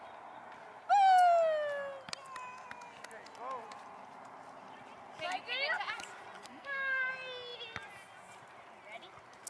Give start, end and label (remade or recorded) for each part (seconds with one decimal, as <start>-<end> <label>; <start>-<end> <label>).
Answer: 0.0-6.4 recorded; 6.4-7.1 remade; 7.1-9.5 recorded